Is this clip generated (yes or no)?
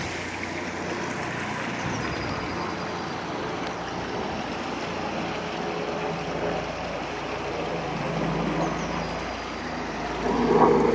no